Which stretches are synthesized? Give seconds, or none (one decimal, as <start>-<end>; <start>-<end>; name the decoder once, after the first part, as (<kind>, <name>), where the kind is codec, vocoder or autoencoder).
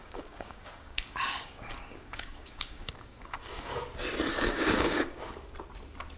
0.0-3.7 (codec, DAC); 4.3-5.3